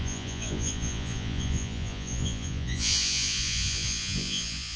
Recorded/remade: remade